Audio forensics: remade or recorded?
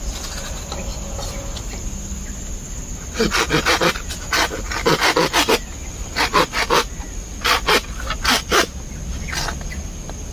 recorded